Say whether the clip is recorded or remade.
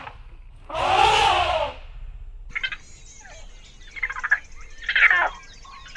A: recorded